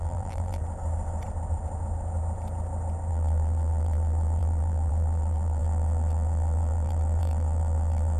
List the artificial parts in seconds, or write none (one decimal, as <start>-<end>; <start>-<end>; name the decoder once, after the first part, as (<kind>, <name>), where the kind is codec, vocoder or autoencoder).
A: 0.0-0.6 (vocoder, BigVGAN v2); 3.1-8.2